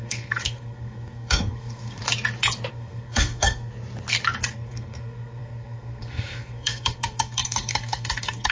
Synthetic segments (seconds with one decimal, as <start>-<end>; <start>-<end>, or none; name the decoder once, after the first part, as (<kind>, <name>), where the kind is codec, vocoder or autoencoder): 0.0-2.0 (codec, SNAC); 2.7-3.7; 4.5-8.5